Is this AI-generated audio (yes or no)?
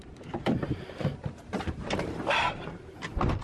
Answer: yes